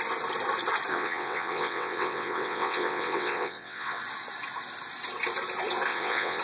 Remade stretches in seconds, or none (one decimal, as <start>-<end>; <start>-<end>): 0.9-4.0; 5.9-6.4